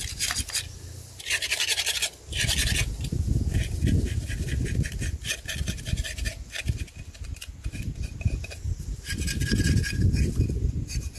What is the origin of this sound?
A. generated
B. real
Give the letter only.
B